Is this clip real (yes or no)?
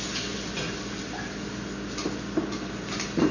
yes